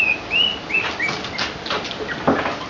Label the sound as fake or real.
real